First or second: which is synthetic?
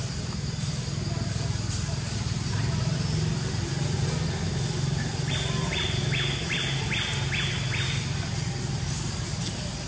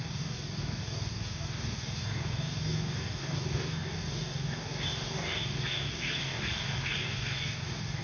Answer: second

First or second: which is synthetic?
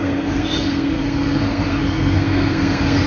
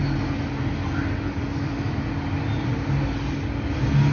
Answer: first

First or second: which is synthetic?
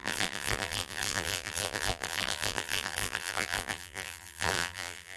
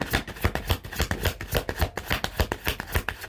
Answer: first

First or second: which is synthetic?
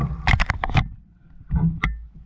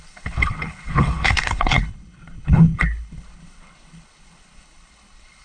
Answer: second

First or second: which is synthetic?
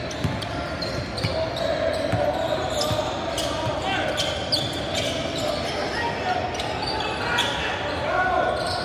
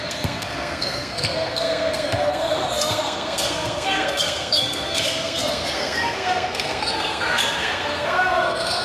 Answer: second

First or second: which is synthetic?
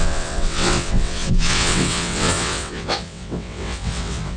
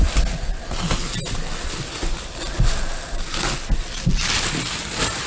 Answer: first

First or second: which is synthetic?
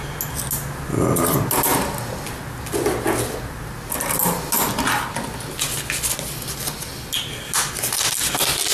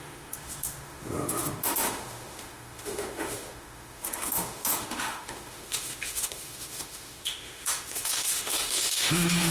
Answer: second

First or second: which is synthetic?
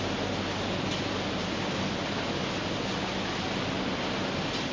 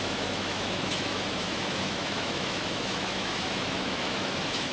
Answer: second